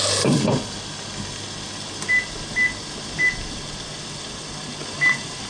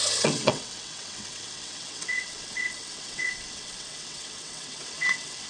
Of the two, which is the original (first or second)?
first